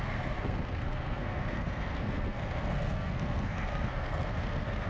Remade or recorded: remade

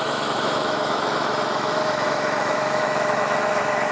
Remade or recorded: remade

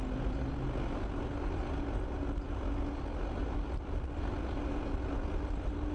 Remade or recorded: recorded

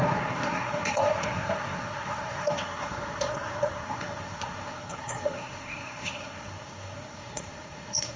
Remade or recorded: remade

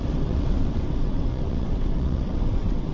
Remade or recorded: remade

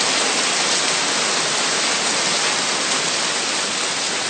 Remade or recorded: recorded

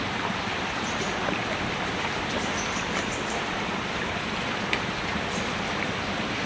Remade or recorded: remade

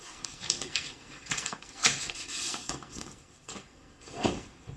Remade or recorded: remade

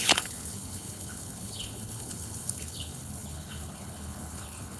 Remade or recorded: remade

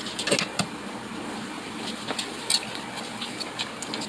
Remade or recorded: recorded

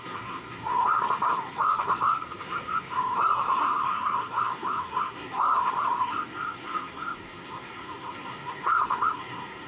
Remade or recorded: remade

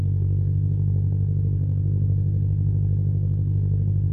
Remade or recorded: remade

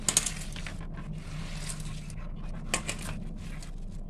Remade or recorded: recorded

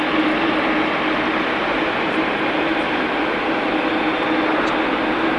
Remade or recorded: recorded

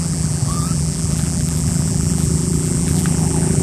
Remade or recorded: remade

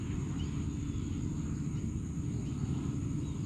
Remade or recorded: recorded